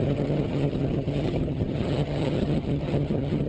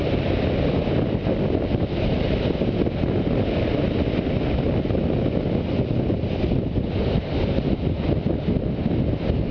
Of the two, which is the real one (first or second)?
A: second